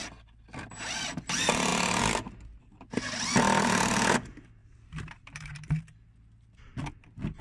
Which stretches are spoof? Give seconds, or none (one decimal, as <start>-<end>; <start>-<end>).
4.6-5.8